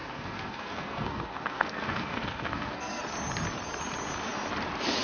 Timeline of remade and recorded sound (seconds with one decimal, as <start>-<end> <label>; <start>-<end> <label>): 0.0-3.0 remade; 3.0-5.0 recorded